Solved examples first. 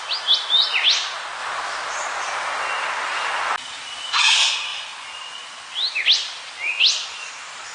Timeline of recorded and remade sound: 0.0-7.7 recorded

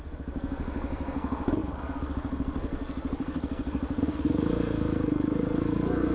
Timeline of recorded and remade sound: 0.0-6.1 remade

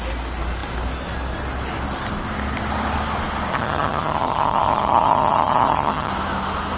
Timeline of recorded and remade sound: 0.0-3.5 recorded; 3.5-6.1 remade; 6.1-6.8 recorded

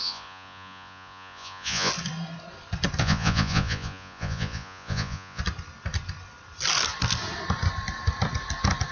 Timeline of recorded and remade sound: 0.0-1.9 remade; 1.9-3.0 recorded; 3.0-5.4 remade; 5.4-8.9 recorded

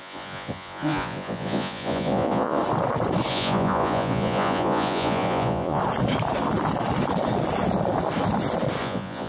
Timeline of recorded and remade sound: 0.0-2.6 remade; 2.6-3.3 recorded; 3.3-5.8 remade; 5.8-8.8 recorded; 8.8-9.3 remade

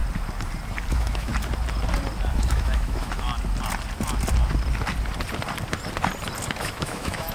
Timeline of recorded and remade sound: 0.0-0.9 recorded; 0.9-1.3 remade; 1.3-2.3 recorded; 2.3-3.3 remade; 3.3-6.6 recorded; 6.6-7.3 remade

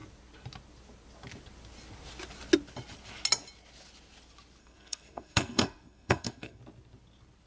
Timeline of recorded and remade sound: 0.0-4.6 recorded; 4.6-6.6 remade; 6.6-7.5 recorded